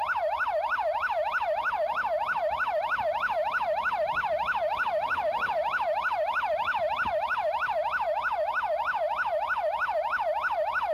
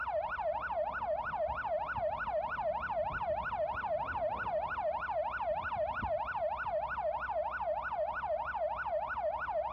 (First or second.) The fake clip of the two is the first